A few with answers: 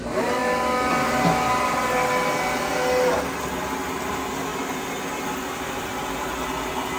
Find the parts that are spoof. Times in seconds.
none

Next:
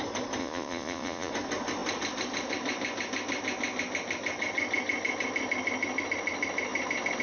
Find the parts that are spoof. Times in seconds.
0.4-1.3

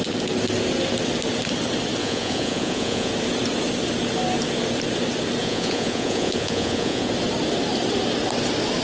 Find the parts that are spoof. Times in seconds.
2.0-3.1; 5.4-7.1

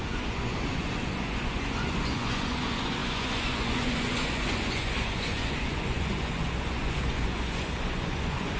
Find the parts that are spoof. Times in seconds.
0.0-8.6

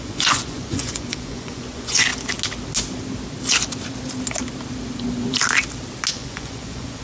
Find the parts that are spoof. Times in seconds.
0.0-2.1; 6.1-7.0